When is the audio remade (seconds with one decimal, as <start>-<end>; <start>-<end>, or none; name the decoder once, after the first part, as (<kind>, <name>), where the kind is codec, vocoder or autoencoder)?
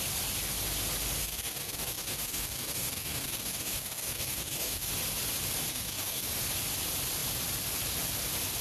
1.2-4.9 (codec, DAC); 5.7-6.3